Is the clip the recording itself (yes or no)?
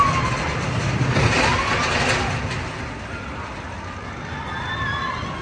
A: yes